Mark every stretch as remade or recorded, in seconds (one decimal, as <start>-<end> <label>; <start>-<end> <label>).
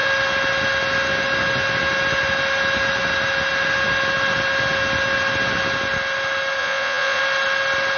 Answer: 0.0-6.6 recorded; 6.6-7.2 remade; 7.2-8.0 recorded